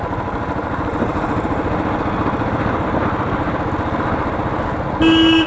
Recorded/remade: recorded